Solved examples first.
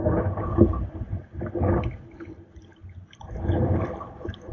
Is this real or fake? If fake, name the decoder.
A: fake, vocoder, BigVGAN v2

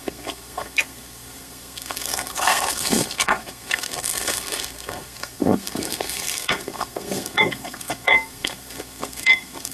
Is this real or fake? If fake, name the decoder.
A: fake, codec, SNAC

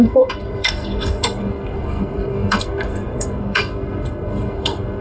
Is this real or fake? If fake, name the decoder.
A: fake, codec, SNAC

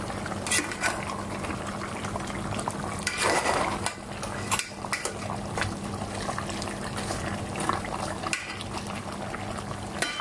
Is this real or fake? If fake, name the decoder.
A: real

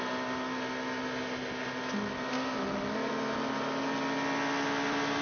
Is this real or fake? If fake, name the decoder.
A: real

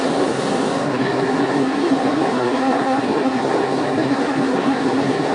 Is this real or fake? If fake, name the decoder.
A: fake, codec, SNAC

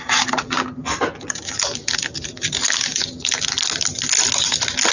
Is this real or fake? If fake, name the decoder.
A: real